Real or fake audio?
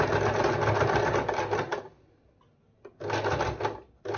real